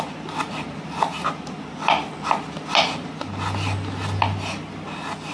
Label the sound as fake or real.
real